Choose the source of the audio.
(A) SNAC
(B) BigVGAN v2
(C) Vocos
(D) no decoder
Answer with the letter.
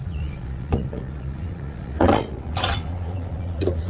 C